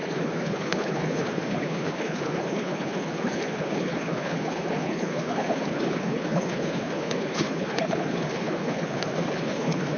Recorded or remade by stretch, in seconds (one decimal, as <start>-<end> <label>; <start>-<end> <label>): 0.0-10.0 remade